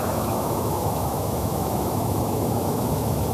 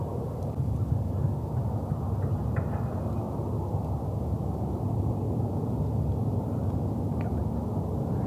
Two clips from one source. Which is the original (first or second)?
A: second